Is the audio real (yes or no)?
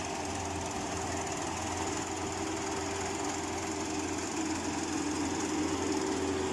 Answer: yes